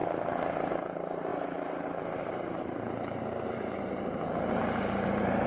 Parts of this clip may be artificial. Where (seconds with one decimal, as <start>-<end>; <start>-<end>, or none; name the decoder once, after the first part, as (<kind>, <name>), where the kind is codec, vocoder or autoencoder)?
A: 0.7-5.5 (vocoder, BigVGAN v2)